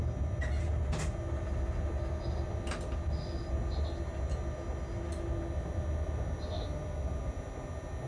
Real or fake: real